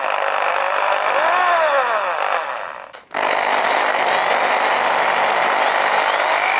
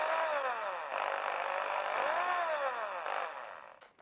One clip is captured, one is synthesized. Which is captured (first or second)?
second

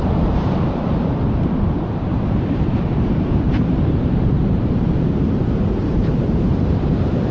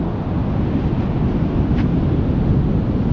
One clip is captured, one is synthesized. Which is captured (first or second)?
second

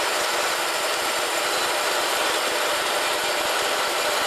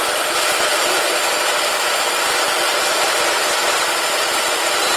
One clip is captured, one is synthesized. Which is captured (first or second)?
first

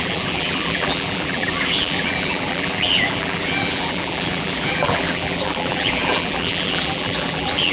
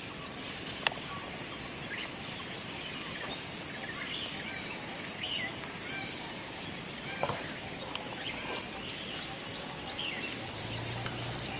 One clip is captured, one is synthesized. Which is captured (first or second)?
second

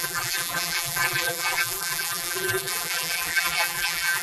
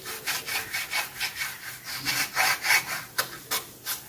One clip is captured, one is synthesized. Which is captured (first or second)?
second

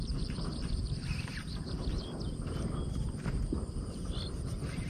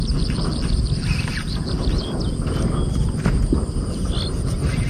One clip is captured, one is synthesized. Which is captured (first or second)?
second